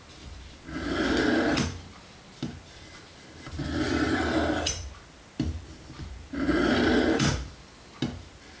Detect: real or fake real